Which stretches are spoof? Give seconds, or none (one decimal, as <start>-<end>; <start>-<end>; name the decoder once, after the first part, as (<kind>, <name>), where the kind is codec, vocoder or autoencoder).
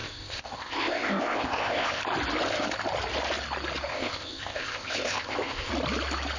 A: 0.0-2.0 (codec, ZipCodec); 3.9-5.7